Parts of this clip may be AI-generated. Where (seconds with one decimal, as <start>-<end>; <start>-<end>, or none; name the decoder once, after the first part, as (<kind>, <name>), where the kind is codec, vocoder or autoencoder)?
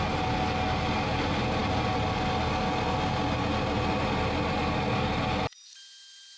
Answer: none